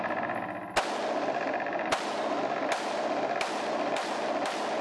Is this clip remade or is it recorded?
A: recorded